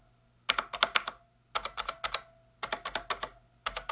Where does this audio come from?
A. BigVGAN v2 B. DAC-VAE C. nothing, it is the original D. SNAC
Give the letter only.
C